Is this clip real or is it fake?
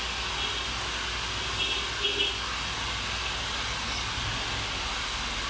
real